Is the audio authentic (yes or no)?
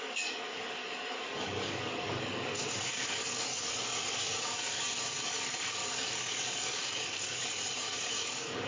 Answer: no